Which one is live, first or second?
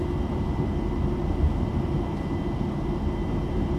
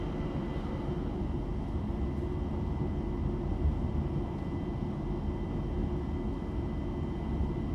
second